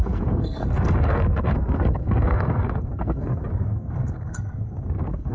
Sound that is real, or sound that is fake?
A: fake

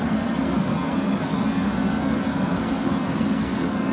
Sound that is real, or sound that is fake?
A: fake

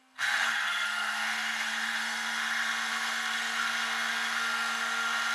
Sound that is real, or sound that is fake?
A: fake